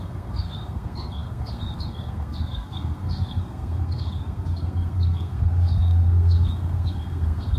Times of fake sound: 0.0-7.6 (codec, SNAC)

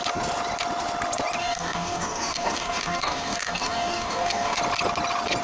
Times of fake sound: 1.4-4.6 (codec, DAC)

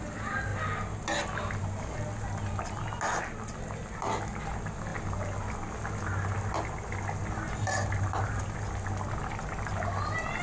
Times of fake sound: none

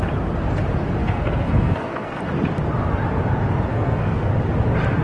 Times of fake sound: 1.0-2.2 (codec, SNAC); 3.7-4.3